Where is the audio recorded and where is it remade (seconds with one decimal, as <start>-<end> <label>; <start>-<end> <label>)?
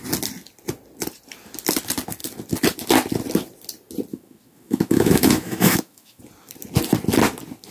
0.0-4.1 recorded; 4.1-6.2 remade; 6.2-7.7 recorded